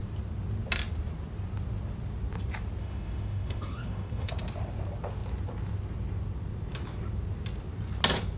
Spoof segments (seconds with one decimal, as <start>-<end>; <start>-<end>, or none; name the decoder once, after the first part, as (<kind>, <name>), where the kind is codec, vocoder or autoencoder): 2.8-4.3 (autoencoder, DAC-VAE)